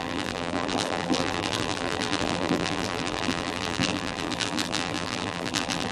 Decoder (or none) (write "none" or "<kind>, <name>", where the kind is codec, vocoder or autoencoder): vocoder, BigVGAN v2